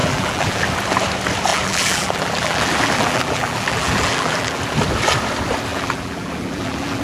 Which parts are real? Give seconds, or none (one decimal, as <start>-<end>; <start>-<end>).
0.6-1.5; 4.6-5.7

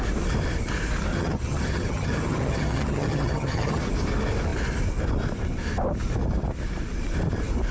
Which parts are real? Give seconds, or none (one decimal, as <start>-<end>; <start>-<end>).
0.0-1.1; 3.9-7.7

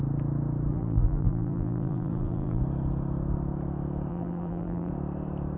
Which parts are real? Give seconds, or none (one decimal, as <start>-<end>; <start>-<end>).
0.0-0.7; 2.6-4.1; 4.9-5.6

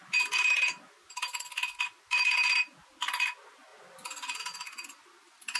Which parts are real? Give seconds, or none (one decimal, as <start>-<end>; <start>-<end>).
0.0-3.7; 4.5-5.6

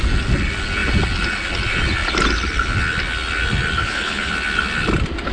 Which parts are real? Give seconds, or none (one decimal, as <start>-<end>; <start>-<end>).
0.0-3.8; 4.3-5.3

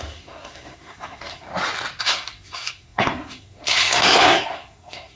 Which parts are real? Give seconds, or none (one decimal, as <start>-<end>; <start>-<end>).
1.5-2.0

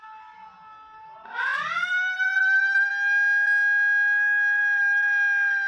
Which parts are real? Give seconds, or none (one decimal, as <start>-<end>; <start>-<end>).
0.0-1.5; 2.9-5.7